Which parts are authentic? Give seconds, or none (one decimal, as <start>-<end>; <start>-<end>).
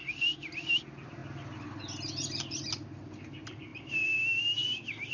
0.0-5.1